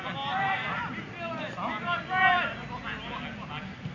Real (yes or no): yes